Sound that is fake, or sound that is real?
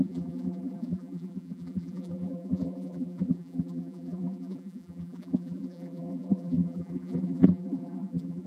fake